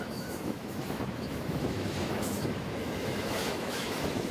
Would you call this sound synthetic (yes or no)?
yes